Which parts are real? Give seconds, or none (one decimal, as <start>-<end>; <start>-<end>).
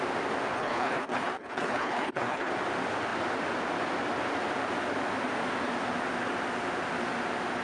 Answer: 0.0-0.5; 2.5-7.6